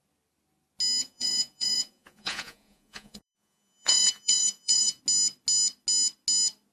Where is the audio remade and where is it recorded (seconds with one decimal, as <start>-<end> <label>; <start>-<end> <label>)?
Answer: 0.0-1.0 recorded; 1.0-5.0 remade; 5.0-6.7 recorded